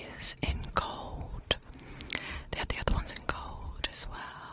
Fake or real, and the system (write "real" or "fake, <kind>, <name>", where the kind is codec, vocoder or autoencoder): real